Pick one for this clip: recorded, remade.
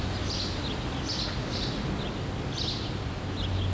recorded